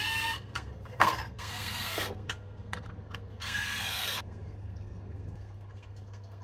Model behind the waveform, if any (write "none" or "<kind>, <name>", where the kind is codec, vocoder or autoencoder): codec, SNAC